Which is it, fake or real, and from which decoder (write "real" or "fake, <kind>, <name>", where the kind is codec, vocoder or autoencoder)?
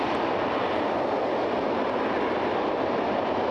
real